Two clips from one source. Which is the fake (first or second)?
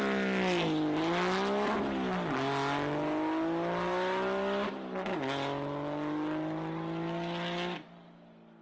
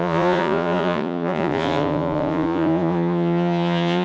second